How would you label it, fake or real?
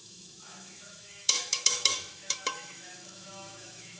fake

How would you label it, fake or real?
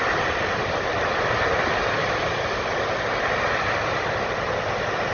real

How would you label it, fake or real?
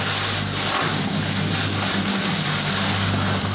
real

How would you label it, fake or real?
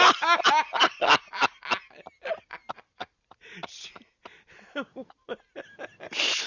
real